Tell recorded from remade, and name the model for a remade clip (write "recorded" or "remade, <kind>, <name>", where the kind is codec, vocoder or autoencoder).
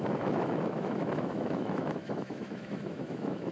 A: remade, autoencoder, DAC-VAE